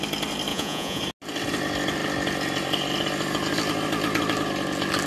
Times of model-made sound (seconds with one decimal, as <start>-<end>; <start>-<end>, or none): 0.5-1.0